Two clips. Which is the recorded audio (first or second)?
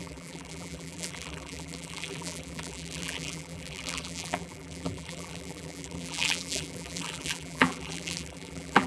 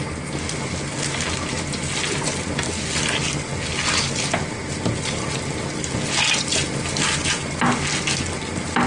second